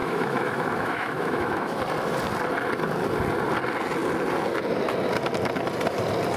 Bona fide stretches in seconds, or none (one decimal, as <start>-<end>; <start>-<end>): 1.8-6.4